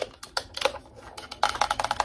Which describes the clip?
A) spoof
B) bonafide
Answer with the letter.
B